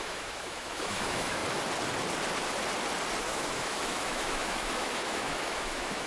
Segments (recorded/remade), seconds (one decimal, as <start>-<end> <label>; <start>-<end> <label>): 0.0-1.4 remade; 1.4-3.2 recorded; 3.2-6.1 remade